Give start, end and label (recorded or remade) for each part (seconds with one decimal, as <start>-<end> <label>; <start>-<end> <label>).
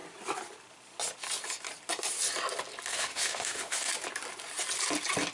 0.0-2.9 recorded; 2.9-3.9 remade; 3.9-5.3 recorded